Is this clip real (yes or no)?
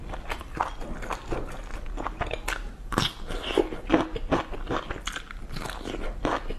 yes